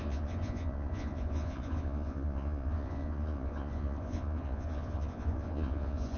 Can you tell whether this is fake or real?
fake